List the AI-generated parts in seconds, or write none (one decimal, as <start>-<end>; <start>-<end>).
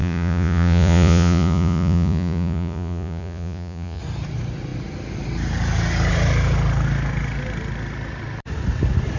0.0-4.0